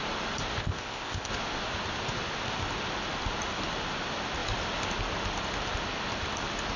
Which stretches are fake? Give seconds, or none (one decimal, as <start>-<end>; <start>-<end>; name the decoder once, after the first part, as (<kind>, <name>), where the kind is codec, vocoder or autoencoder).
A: 0.6-1.3 (codec, ZipCodec)

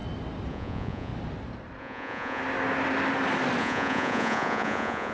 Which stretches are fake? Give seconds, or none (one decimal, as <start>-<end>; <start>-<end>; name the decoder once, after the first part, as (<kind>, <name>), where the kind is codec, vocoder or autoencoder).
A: 0.5-1.1 (vocoder, Vocos); 1.8-2.4; 3.6-5.1

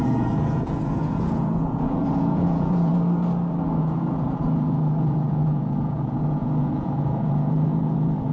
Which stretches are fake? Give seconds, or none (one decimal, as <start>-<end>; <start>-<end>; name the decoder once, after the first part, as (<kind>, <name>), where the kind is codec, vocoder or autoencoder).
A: 0.0-2.9 (vocoder, Vocos); 3.8-8.3

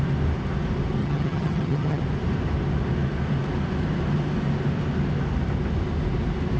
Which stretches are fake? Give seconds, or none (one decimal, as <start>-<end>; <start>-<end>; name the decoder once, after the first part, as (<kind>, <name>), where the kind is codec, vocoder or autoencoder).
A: 1.0-2.0 (vocoder, HiFi-GAN)

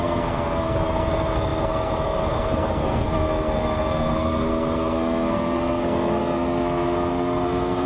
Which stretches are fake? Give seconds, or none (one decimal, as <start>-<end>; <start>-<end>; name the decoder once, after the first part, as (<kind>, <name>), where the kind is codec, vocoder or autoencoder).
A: 0.0-7.9 (codec, SNAC)

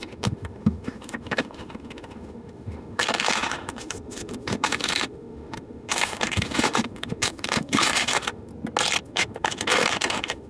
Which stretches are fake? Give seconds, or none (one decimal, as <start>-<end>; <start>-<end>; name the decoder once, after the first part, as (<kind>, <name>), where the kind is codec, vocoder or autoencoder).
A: 0.0-8.5 (autoencoder, DAC-VAE); 9.0-10.5